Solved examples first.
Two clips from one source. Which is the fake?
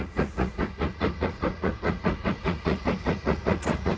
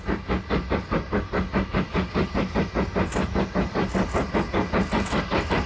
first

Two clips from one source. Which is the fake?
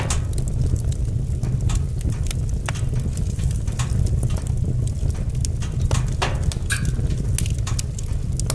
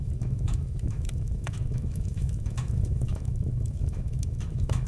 second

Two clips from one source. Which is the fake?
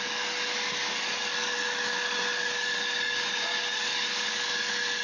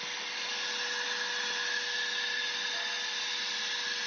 first